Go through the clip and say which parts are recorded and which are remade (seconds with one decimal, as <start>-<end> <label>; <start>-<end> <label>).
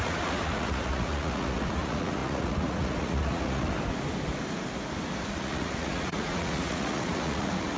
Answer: 0.0-3.7 remade; 3.7-5.3 recorded; 5.3-7.8 remade